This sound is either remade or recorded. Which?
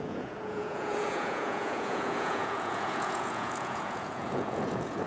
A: remade